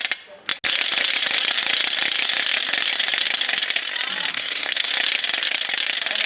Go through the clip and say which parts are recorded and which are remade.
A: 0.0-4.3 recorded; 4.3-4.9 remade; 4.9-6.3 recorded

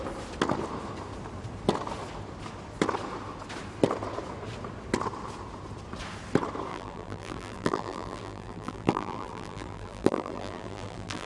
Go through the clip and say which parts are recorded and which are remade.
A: 0.0-6.7 recorded; 6.7-11.3 remade

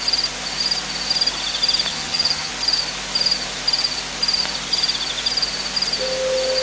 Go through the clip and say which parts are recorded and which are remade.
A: 0.0-1.9 recorded; 1.9-2.5 remade; 2.5-6.6 recorded

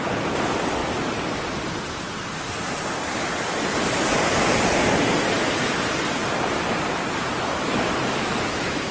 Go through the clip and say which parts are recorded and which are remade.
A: 0.0-0.8 remade; 0.8-1.5 recorded; 1.5-3.8 remade; 3.8-5.4 recorded; 5.4-8.9 remade